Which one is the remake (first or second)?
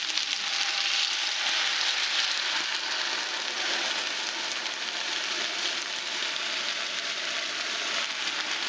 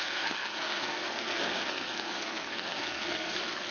second